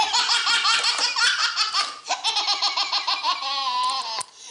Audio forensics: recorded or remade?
recorded